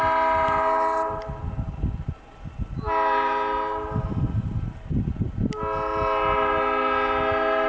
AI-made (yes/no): no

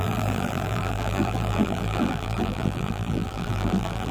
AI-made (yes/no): yes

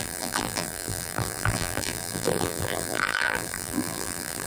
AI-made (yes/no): yes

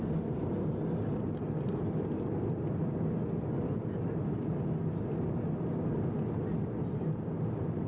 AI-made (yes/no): no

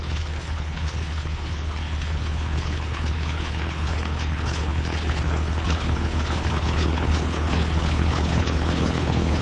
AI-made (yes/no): yes